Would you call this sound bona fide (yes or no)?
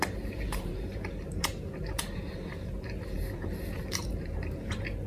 no